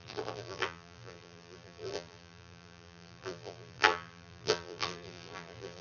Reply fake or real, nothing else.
fake